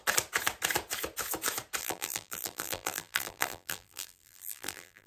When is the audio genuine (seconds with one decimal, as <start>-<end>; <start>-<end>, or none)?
0.0-1.8